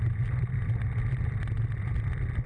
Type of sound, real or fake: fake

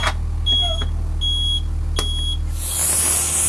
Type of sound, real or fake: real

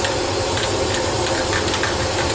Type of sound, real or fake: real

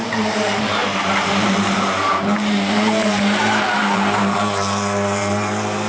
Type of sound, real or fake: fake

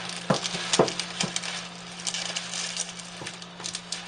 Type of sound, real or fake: real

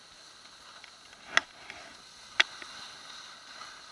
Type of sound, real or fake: real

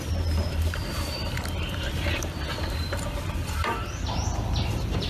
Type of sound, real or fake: fake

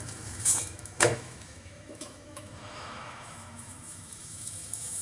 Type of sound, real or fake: fake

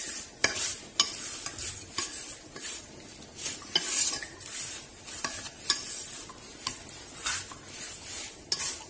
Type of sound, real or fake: real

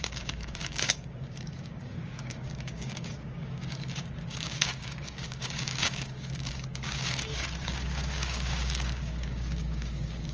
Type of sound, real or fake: fake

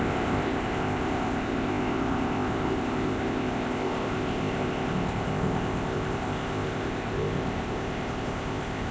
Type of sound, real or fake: fake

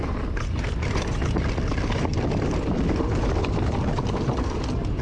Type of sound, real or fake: real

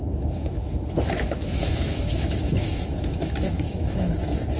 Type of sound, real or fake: fake